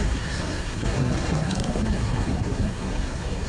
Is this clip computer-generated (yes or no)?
yes